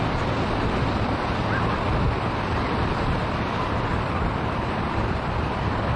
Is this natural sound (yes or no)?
no